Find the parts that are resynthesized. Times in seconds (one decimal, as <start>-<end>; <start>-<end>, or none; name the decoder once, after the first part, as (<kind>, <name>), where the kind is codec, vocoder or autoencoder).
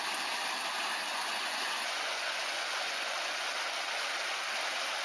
1.1-3.6 (vocoder, Vocos)